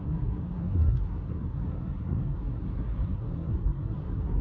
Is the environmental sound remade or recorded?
remade